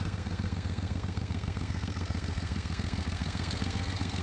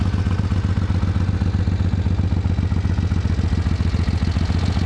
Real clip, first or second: second